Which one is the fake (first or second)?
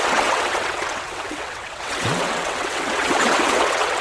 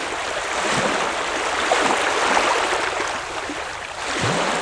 first